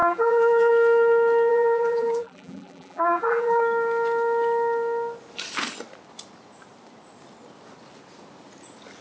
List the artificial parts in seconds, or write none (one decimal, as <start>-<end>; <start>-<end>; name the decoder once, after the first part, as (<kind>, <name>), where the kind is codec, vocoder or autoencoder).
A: 0.0-0.7 (vocoder, BigVGAN v2); 1.5-3.6